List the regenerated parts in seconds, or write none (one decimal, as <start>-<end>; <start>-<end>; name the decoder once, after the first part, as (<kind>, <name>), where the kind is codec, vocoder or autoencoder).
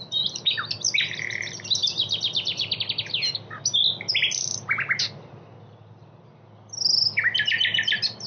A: none